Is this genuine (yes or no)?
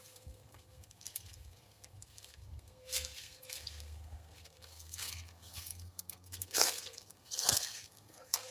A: no